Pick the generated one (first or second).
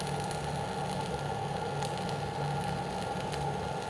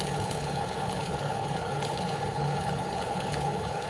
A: second